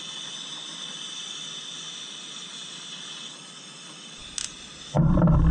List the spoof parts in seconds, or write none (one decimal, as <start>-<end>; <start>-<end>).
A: none